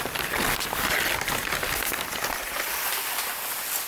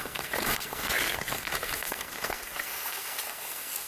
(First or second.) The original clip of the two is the first